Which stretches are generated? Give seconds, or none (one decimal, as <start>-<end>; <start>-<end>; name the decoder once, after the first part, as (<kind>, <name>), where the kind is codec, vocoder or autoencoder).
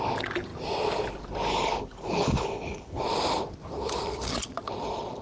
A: 1.5-3.0 (codec, HILCodec)